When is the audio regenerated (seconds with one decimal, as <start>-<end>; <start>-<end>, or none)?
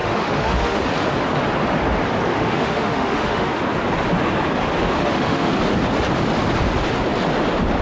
0.0-0.8; 2.3-3.6; 4.8-5.5